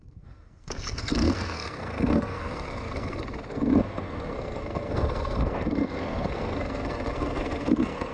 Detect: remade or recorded remade